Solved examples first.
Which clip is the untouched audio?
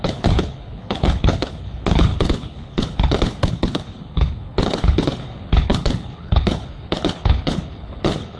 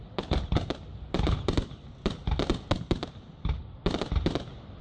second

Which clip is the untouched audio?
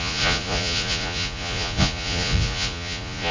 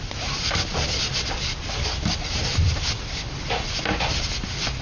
second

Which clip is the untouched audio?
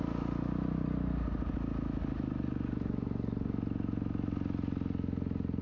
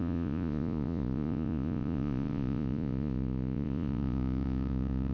first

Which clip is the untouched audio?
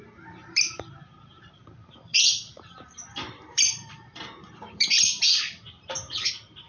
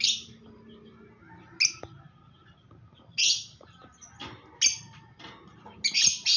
second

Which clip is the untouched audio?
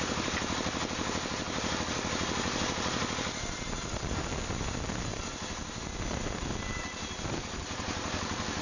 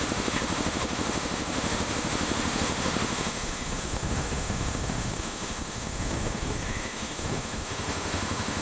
first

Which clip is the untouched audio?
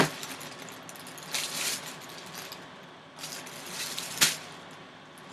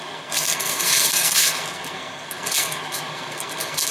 first